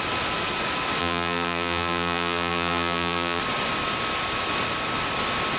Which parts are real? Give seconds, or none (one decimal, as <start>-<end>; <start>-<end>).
0.0-1.0; 3.4-5.6